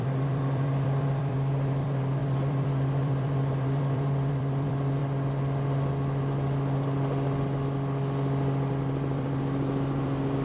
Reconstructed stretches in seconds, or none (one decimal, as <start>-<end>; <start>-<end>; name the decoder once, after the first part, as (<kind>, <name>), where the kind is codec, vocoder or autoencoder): 0.0-5.0 (vocoder, BigVGAN v2); 8.7-10.4